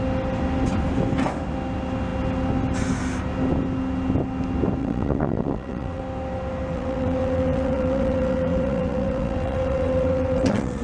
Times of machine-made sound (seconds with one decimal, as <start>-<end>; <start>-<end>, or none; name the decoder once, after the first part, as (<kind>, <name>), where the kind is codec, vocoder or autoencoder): 4.8-6.0 (vocoder, WaveNeXt); 6.7-10.8